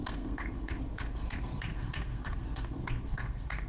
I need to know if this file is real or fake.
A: fake